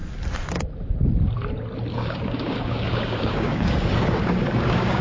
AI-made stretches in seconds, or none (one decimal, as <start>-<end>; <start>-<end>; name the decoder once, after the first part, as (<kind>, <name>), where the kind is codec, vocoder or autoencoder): 1.9-5.0 (codec, DAC)